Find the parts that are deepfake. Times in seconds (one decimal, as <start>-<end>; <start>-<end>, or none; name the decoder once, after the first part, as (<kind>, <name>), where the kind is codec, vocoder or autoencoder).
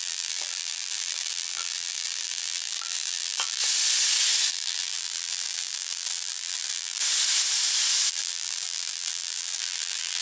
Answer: 0.0-3.6 (vocoder, BigVGAN v2); 4.5-7.0; 8.1-10.2